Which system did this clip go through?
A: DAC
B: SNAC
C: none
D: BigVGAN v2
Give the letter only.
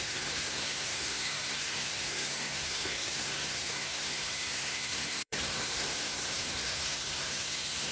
B